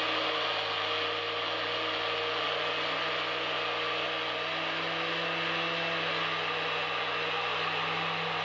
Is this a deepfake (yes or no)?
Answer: no